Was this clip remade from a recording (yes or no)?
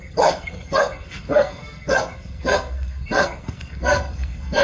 yes